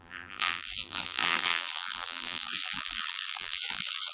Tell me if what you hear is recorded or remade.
remade